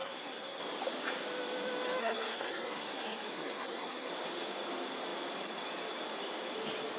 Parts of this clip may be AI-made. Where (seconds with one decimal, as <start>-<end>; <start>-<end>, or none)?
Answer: 0.0-0.6; 2.0-4.1